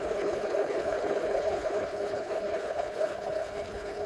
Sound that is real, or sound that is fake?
fake